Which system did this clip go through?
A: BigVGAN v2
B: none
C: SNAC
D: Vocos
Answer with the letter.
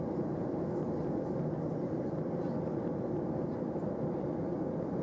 B